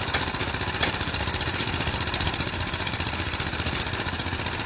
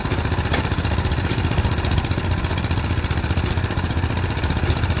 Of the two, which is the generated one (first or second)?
first